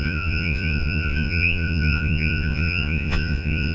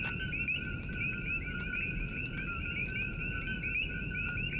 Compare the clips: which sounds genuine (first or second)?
second